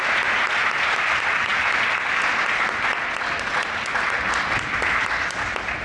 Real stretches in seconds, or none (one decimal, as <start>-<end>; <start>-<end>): 0.0-5.8